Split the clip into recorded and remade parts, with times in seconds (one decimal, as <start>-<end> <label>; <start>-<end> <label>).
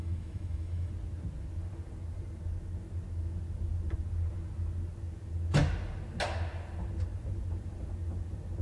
0.0-0.9 remade; 0.9-8.6 recorded